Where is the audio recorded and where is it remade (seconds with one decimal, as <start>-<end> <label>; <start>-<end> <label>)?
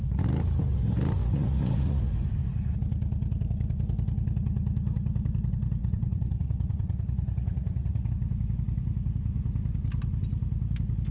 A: 0.0-1.2 recorded; 1.2-2.1 remade; 2.1-5.8 recorded; 5.8-8.1 remade; 8.1-11.1 recorded